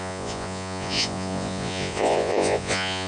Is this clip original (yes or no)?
no